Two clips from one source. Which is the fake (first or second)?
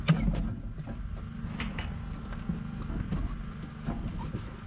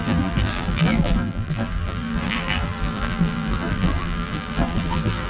second